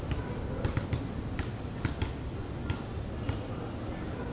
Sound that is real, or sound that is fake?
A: real